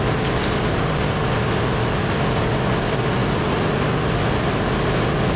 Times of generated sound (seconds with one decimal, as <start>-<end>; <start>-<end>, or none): none